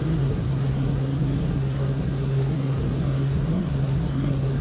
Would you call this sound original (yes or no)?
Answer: no